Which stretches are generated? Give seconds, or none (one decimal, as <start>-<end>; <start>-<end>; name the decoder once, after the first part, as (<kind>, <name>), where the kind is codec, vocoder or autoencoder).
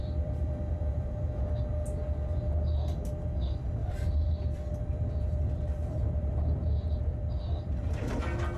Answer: 0.0-1.2 (vocoder, BigVGAN v2); 3.8-8.2